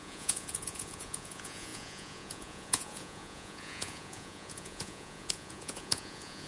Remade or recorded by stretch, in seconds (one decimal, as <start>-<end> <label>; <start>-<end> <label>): 0.0-6.5 remade